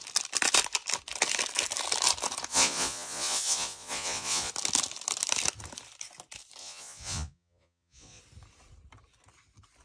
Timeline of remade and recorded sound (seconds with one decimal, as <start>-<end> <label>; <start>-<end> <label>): 0.0-2.5 recorded; 2.5-4.5 remade; 4.5-6.6 recorded; 6.6-8.2 remade; 8.2-9.8 recorded